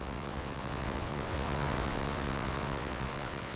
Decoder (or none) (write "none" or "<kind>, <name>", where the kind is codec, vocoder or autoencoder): vocoder, WaveNeXt